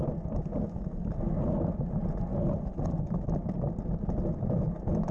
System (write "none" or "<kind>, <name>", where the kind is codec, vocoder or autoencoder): none